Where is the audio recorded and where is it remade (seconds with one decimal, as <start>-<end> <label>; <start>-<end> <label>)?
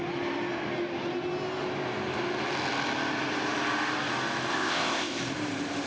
0.0-4.5 recorded; 4.5-5.2 remade; 5.2-5.9 recorded